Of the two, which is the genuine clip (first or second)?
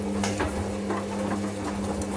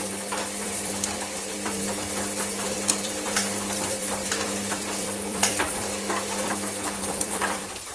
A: first